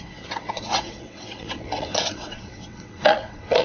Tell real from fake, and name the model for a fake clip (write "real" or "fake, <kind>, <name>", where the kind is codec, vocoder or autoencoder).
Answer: fake, vocoder, WaveNeXt